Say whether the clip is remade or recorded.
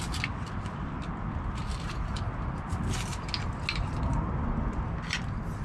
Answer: recorded